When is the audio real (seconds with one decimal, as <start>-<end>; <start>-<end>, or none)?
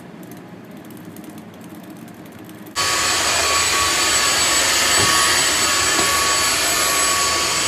0.0-7.7